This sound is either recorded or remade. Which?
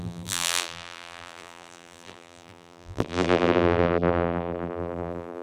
remade